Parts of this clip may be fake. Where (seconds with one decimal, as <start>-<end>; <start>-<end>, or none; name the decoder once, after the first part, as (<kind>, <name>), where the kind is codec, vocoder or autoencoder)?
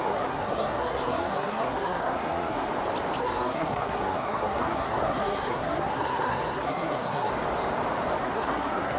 0.0-2.7 (codec, SNAC); 3.2-7.3; 8.2-9.0